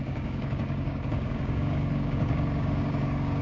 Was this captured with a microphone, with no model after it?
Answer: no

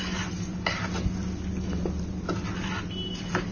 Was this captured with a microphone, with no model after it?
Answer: yes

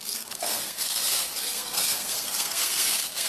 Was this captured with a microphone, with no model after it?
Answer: no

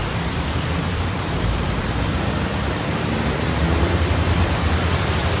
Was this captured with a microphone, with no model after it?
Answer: no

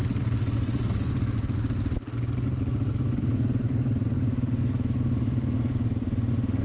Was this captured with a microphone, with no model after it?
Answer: yes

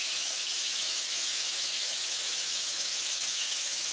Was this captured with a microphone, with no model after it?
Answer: no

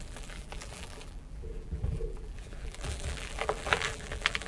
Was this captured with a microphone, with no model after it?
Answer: no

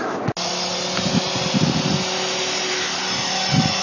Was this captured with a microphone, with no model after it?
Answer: yes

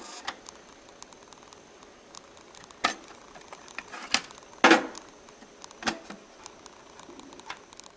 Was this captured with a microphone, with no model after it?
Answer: yes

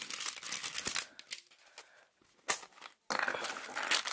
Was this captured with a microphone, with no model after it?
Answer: yes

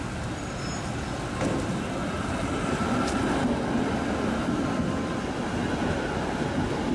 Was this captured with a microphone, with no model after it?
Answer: yes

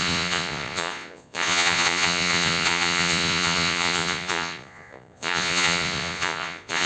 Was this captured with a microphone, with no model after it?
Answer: no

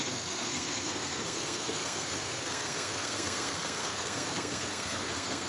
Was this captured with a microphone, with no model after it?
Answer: no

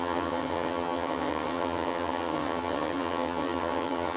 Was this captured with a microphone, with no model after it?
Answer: no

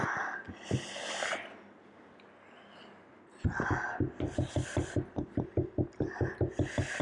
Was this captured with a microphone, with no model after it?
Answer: yes